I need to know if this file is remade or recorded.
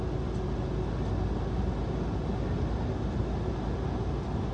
recorded